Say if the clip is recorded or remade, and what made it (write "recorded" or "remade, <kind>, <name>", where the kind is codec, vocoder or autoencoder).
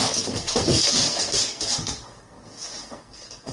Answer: remade, codec, SNAC